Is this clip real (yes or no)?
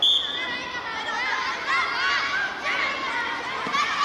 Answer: yes